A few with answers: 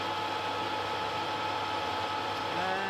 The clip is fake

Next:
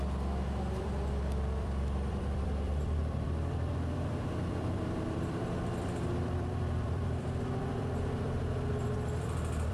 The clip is fake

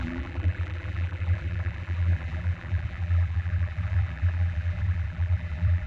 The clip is fake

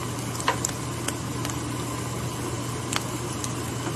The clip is real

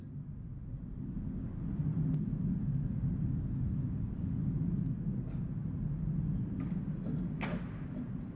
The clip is real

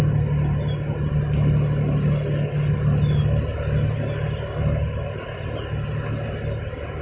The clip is real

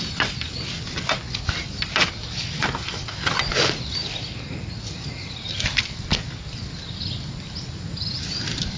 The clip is real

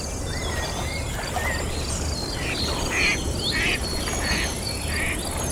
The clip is real